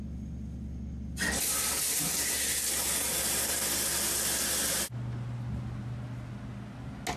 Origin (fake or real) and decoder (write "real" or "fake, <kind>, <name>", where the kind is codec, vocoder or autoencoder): real